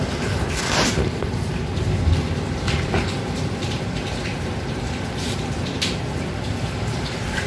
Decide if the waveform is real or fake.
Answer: fake